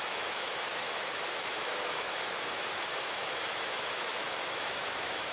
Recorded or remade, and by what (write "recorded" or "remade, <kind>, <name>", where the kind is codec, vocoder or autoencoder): remade, autoencoder, DAC-VAE